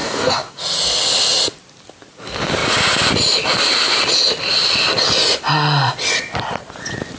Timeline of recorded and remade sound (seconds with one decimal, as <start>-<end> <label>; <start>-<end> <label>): 0.0-0.6 remade; 0.6-7.2 recorded